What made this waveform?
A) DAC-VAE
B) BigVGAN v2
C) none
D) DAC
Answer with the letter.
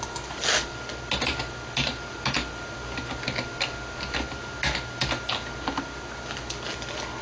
C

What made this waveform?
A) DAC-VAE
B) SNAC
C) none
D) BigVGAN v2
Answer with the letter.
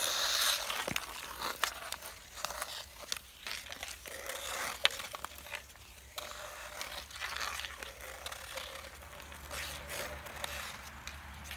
C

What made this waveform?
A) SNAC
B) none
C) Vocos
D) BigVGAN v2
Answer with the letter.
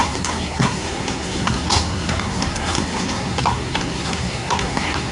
A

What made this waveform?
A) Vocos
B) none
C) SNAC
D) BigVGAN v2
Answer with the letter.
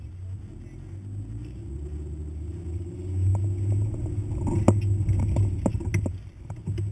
B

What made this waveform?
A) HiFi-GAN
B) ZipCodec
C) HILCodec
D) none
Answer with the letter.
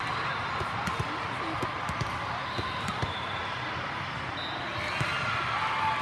D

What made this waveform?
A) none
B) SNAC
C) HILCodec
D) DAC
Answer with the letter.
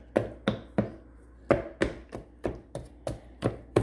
A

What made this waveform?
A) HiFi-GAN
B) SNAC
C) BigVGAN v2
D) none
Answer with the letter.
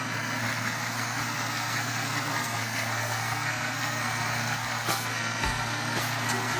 B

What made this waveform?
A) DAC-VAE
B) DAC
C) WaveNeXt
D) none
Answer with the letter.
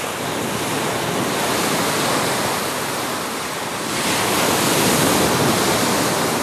D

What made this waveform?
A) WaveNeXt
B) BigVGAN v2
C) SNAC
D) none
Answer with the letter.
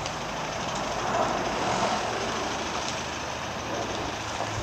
B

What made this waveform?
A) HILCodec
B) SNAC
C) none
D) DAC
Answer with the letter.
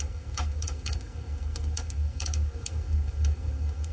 B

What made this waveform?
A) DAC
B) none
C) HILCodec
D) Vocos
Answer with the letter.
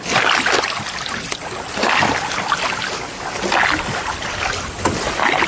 B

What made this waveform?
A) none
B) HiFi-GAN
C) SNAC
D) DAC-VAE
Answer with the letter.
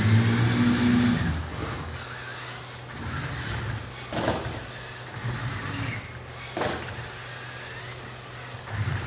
A